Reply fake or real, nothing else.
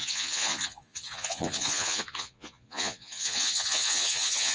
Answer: fake